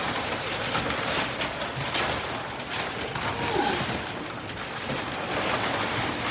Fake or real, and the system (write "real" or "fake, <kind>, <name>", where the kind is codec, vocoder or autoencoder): real